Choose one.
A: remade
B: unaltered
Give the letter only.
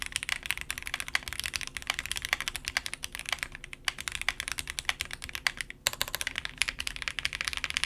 B